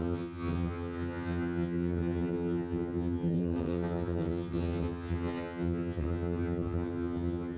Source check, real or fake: fake